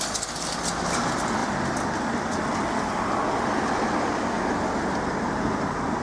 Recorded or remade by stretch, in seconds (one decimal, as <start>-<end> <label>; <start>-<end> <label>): 0.0-6.0 recorded